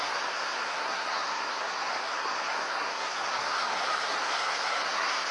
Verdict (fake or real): fake